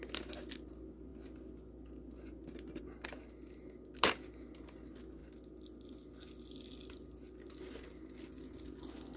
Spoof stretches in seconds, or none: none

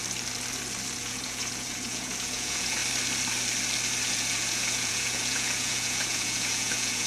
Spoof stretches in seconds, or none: 0.9-2.8 (vocoder, Vocos); 4.1-7.1

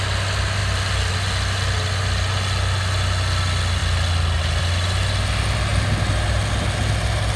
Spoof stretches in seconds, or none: none

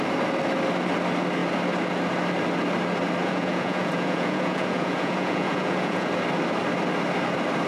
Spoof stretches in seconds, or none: 3.2-6.1 (vocoder, Vocos)

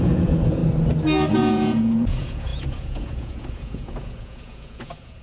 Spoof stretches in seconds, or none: 0.0-0.6 (vocoder, Vocos); 1.3-5.2

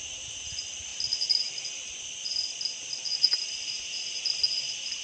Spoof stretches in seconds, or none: none